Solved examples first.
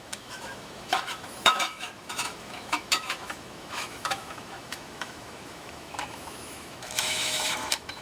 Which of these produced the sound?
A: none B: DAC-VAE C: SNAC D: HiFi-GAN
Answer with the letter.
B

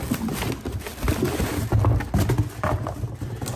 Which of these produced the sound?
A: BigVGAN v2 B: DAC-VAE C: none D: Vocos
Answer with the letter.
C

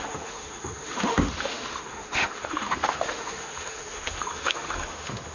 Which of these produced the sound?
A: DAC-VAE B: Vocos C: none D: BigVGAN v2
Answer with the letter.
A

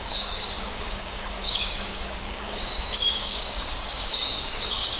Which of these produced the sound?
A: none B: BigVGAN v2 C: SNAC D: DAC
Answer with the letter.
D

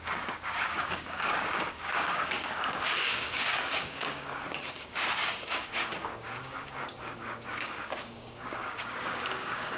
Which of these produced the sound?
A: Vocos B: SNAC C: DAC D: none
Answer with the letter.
C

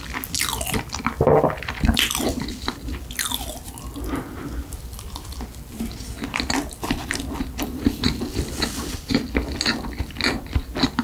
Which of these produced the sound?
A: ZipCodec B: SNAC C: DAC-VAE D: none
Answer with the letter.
D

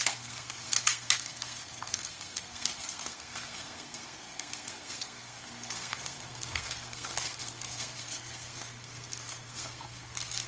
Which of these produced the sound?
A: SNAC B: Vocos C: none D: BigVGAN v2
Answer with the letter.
A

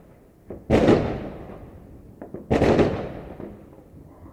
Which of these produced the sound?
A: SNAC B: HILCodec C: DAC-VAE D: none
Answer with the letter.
D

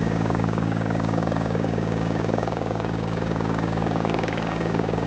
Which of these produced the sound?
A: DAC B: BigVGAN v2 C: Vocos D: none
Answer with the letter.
A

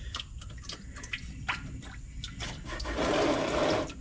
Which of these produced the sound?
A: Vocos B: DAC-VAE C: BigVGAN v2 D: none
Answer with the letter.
D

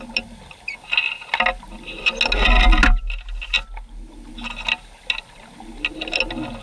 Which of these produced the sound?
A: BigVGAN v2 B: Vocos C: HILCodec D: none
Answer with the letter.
D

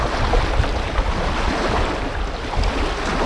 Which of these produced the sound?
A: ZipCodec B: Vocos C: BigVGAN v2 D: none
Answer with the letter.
D